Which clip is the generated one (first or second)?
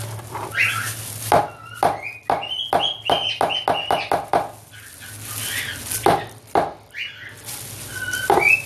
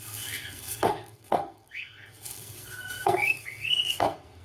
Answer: second